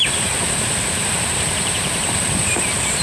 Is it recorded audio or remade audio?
remade